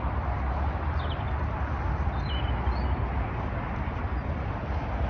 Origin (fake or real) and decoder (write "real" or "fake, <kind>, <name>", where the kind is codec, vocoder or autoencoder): real